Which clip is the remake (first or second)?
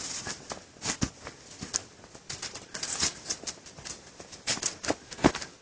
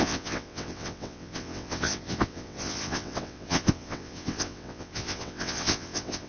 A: second